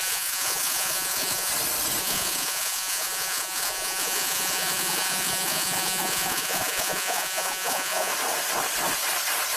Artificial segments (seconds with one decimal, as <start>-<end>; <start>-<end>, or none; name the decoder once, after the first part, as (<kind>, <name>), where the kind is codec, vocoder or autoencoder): 0.0-1.5 (vocoder, Vocos); 2.0-8.1